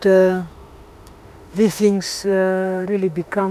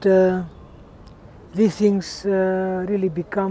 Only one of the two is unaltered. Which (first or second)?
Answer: second